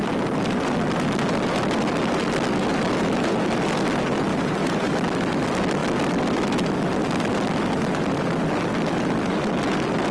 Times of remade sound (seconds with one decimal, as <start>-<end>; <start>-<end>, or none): 4.3-4.9